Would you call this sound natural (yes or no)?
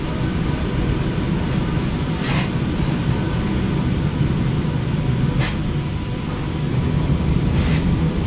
no